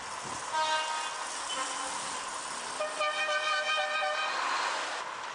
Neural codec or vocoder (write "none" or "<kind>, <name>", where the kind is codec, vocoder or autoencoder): none